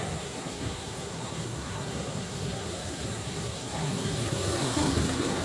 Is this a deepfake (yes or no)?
yes